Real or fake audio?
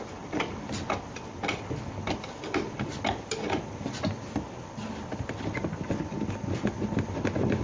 real